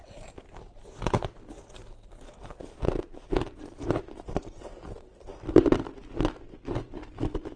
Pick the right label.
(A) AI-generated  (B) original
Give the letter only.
B